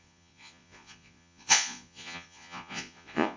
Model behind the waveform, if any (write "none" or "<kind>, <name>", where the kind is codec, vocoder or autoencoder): vocoder, Vocos